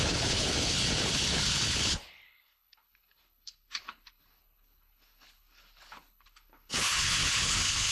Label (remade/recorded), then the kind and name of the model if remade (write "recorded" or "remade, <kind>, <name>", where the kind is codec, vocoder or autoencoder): remade, codec, HILCodec